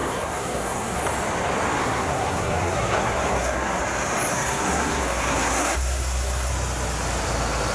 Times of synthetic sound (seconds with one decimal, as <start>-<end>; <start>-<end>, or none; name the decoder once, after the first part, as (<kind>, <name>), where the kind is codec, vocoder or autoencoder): 0.0-1.0 (codec, SNAC); 1.8-3.8; 4.3-6.5